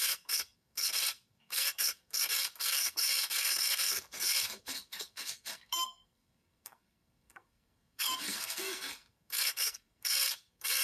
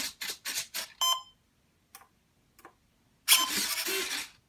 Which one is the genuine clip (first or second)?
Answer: second